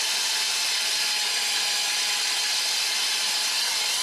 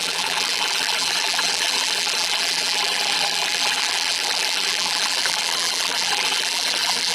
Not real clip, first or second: second